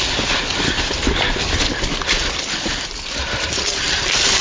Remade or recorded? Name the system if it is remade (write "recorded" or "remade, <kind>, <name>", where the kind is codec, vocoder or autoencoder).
recorded